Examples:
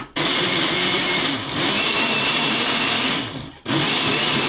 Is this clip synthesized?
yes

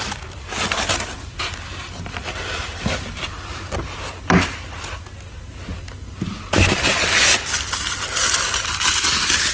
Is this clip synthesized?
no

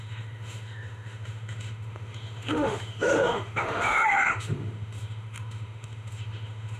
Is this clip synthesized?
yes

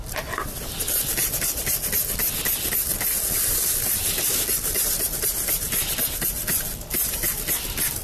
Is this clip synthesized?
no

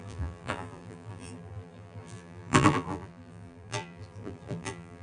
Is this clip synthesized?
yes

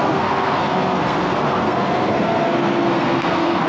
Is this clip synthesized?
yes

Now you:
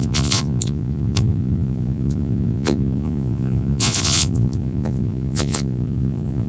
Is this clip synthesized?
yes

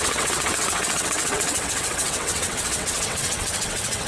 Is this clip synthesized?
yes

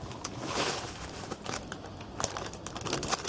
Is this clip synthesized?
yes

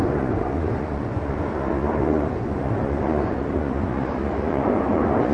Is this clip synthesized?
yes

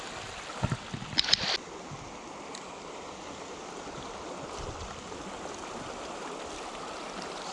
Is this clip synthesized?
no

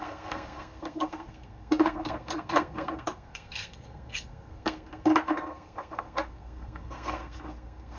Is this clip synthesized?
yes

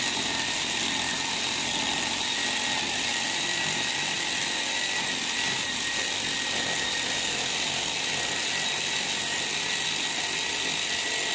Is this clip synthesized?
no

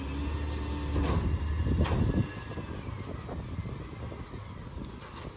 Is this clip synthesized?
no